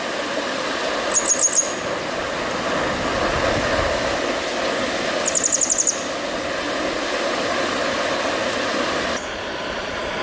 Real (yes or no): yes